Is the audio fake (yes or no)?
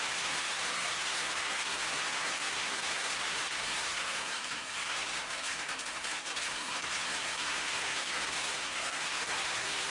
yes